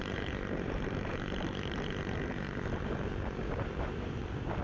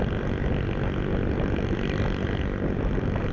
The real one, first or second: second